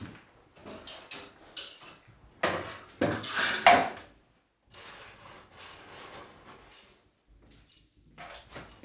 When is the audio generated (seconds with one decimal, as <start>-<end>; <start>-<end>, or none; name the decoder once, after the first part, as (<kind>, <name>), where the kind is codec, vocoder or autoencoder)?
none